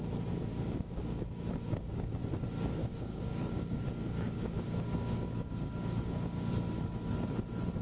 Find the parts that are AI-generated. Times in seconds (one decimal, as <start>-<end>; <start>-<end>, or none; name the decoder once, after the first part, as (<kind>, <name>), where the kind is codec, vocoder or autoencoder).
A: 0.5-2.2 (codec, DAC); 2.8-6.5